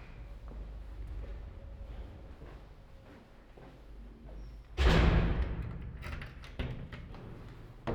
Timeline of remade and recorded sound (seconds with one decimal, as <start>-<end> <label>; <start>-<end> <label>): 0.0-5.3 recorded; 5.3-7.3 remade; 7.3-7.9 recorded